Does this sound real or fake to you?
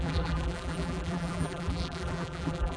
fake